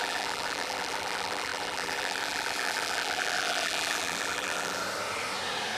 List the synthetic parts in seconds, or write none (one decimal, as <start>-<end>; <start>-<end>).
0.0-4.8